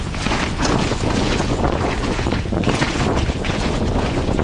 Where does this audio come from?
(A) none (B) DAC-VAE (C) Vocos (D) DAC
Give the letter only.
C